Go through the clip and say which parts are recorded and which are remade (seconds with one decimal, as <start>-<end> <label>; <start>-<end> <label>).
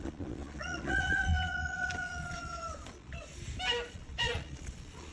0.0-3.3 remade; 3.3-3.9 recorded; 3.9-5.1 remade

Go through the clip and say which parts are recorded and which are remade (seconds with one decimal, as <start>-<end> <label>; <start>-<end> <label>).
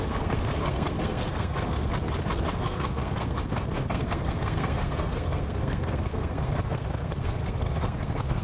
0.0-1.9 remade; 1.9-2.5 recorded; 2.5-8.4 remade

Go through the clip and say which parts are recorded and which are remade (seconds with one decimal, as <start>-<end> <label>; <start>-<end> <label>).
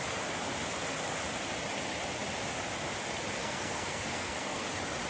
0.0-3.4 recorded; 3.4-4.6 remade; 4.6-5.1 recorded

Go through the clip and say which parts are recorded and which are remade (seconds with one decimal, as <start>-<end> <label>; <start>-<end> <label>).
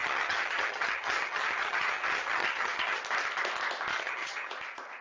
0.0-3.0 remade; 3.0-3.9 recorded; 3.9-4.5 remade; 4.5-5.0 recorded